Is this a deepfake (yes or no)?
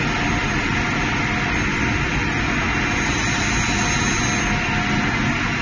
no